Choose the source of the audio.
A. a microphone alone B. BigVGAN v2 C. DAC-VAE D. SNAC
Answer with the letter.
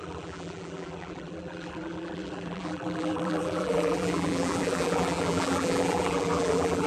B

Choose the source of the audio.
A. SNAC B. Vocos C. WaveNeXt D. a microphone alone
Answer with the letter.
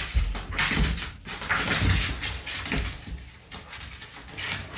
D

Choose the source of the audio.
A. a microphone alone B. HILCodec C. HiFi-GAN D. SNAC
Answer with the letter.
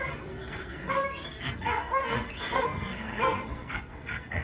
D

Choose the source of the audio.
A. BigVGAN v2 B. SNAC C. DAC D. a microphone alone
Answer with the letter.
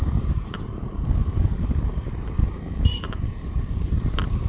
A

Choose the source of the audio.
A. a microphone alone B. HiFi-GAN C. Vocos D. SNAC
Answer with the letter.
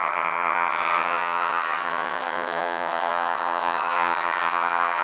B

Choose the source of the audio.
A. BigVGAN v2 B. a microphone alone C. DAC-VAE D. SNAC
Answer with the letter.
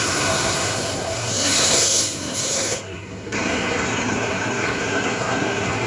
D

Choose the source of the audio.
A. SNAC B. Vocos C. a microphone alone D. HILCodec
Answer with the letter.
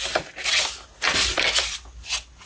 C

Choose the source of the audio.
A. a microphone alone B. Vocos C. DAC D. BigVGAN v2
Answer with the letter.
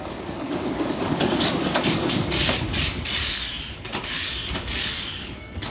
C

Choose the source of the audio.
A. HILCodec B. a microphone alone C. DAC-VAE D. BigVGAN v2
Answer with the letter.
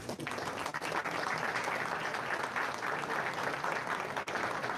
B